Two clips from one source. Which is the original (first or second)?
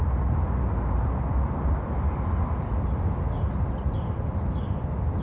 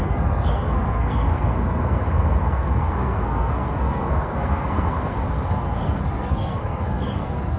first